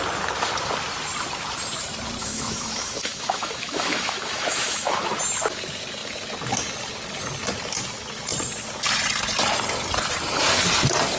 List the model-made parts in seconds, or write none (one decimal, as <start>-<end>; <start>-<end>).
2.2-5.0